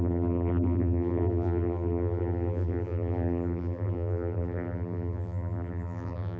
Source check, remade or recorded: remade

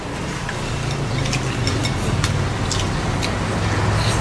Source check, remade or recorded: recorded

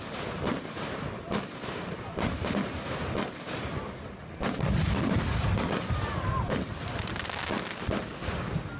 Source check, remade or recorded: recorded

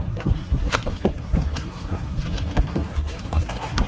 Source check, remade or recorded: remade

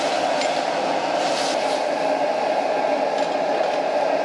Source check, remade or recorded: recorded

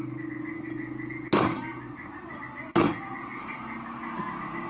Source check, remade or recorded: recorded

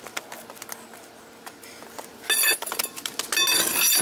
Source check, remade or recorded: recorded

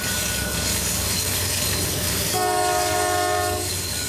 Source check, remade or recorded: remade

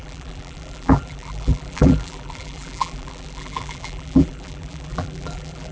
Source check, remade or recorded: remade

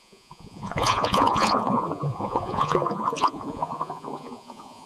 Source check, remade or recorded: remade